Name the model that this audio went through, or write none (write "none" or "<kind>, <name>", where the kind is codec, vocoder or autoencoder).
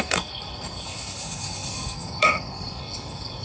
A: codec, SNAC